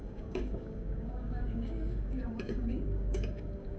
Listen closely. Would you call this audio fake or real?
fake